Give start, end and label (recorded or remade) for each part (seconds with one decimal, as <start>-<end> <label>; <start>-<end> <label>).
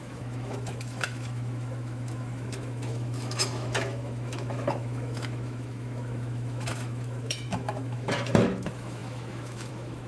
0.0-10.1 remade